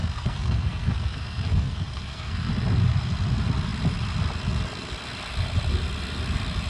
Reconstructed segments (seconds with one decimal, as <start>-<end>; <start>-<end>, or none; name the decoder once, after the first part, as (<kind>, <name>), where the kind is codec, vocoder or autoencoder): 0.0-2.5 (codec, SNAC)